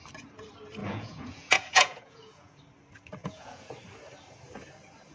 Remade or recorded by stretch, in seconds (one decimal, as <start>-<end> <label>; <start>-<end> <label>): 0.0-0.8 recorded; 0.8-2.6 remade; 2.6-3.2 recorded; 3.2-3.7 remade; 3.7-5.1 recorded